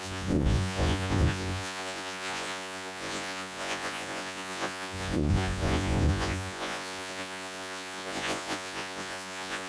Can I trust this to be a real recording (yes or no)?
no